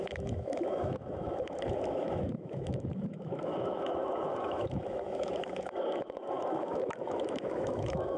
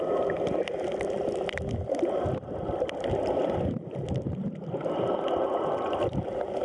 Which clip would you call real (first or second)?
second